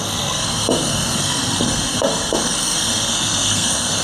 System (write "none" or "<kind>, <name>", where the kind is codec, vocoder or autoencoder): codec, SNAC